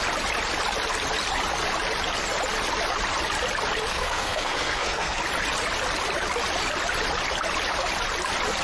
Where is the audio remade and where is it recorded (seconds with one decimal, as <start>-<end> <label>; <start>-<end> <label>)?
0.0-3.9 recorded; 3.9-5.2 remade; 5.2-8.6 recorded